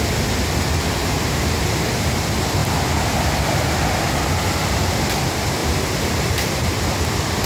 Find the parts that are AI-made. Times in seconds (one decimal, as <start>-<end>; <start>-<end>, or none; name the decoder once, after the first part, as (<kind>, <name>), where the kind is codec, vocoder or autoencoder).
1.0-1.7 (vocoder, BigVGAN v2); 5.6-6.5